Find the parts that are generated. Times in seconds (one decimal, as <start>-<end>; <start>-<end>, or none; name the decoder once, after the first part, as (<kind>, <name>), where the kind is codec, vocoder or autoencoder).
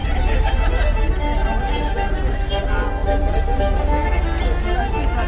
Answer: 0.0-2.6 (vocoder, BigVGAN v2); 3.0-3.6